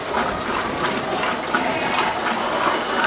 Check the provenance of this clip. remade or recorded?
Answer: remade